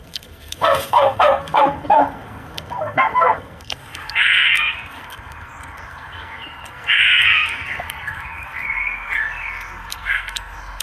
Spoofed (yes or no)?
yes